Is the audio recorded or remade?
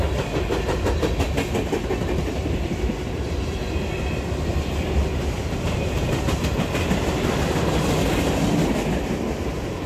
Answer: recorded